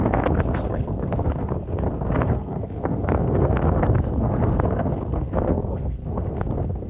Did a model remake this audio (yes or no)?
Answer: yes